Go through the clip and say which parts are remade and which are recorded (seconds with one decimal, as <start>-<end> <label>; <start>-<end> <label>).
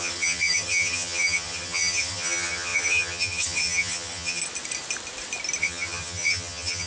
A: 0.0-4.4 remade; 4.4-5.6 recorded; 5.6-6.9 remade